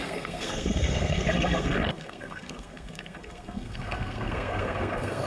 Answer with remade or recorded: remade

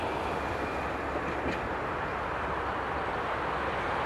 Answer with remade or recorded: recorded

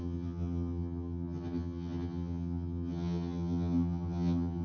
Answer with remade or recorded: remade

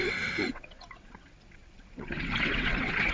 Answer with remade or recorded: remade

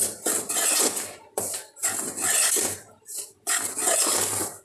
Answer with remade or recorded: recorded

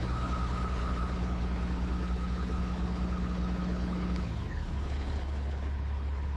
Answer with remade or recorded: remade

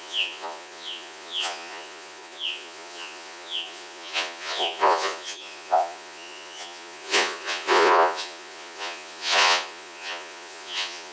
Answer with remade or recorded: remade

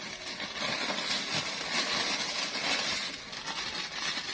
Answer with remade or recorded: recorded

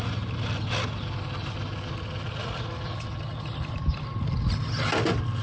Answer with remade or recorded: recorded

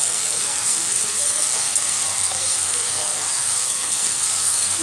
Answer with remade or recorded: remade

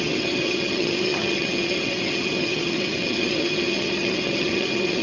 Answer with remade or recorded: remade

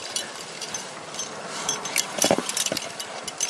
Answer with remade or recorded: remade